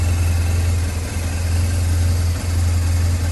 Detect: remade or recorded recorded